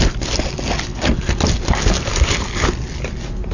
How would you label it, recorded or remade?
recorded